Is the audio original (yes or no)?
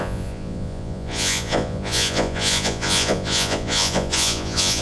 no